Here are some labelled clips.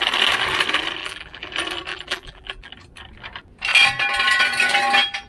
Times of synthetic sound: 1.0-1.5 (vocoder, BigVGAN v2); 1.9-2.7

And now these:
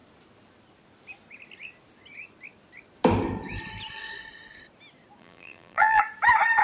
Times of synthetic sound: 5.2-6.0 (vocoder, BigVGAN v2)

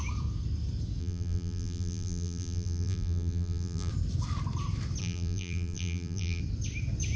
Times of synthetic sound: 1.0-3.9 (vocoder, BigVGAN v2); 5.0-6.4

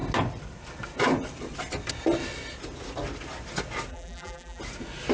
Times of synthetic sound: 3.9-4.6 (vocoder, BigVGAN v2)

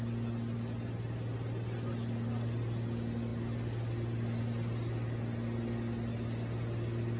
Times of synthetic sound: none

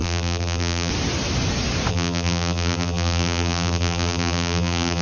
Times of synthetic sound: 0.0-0.9 (vocoder, BigVGAN v2); 1.9-5.0